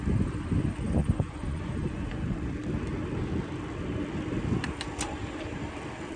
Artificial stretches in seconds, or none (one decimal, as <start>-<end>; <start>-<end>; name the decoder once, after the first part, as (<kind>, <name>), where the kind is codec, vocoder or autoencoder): 1.0-2.6 (vocoder, Vocos)